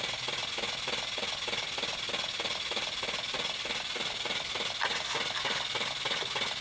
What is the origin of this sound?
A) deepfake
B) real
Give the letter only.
B